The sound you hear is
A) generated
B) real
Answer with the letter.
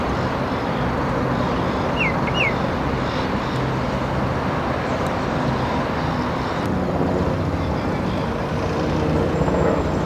B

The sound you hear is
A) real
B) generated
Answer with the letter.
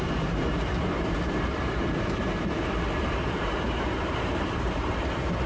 B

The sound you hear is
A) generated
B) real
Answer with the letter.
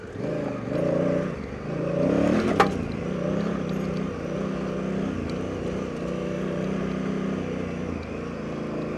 B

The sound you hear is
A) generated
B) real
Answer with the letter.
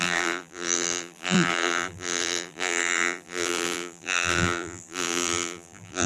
A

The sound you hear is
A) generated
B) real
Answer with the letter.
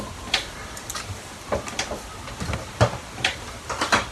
A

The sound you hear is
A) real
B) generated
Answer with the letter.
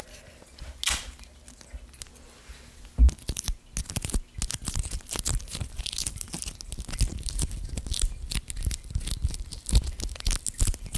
A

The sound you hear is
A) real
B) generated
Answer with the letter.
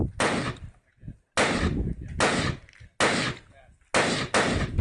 A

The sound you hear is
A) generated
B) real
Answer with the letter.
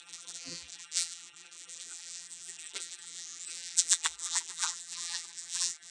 A